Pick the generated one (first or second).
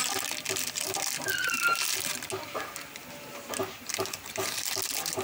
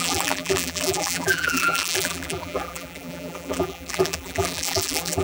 second